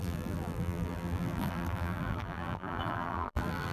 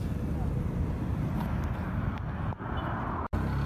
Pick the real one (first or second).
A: second